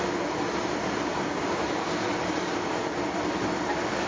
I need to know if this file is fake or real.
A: real